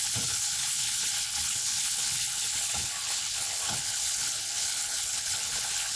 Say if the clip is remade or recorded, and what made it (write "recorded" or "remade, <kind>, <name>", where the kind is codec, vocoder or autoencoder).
remade, codec, HILCodec